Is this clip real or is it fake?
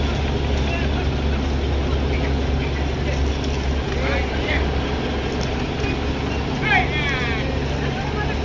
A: real